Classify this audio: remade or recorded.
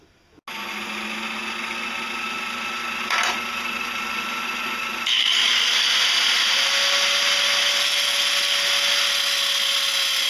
recorded